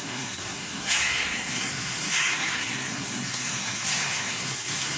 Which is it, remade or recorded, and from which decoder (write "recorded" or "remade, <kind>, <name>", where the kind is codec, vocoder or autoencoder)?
remade, codec, SNAC